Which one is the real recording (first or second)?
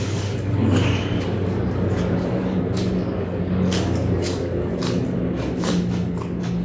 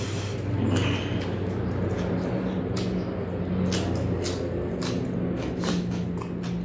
second